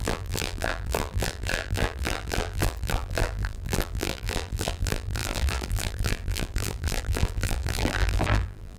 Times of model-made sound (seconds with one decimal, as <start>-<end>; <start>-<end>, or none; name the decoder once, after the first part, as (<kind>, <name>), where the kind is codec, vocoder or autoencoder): 0.0-8.8 (vocoder, BigVGAN v2)